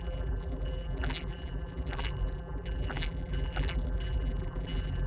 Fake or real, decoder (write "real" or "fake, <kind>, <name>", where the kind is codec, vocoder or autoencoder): fake, vocoder, BigVGAN v2